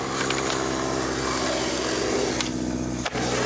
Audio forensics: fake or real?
real